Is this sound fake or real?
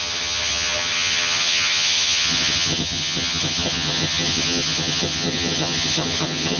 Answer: fake